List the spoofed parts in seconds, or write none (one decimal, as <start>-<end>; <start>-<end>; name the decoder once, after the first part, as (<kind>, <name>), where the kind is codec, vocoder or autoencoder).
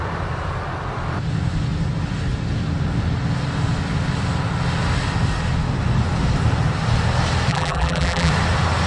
7.5-8.3 (vocoder, BigVGAN v2)